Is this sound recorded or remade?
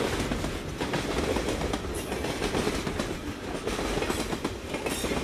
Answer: recorded